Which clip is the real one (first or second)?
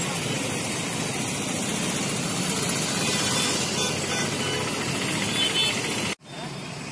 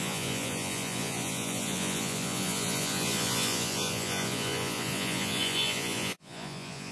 first